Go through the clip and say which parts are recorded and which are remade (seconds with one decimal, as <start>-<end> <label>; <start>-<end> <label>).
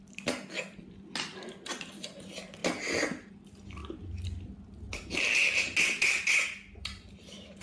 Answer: 0.0-7.6 recorded